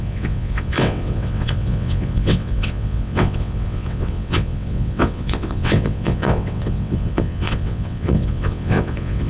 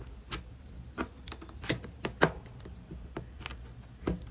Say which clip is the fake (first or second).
first